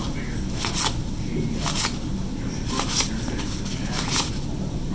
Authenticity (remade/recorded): recorded